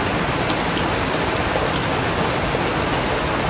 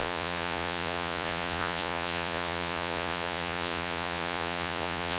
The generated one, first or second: second